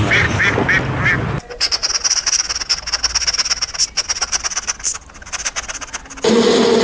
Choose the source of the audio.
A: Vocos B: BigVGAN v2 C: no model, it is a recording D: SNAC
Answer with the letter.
C